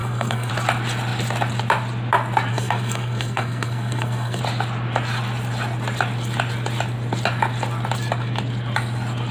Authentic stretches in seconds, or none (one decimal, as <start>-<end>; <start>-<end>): 0.5-2.5; 4.4-9.3